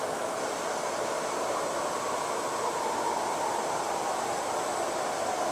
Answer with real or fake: real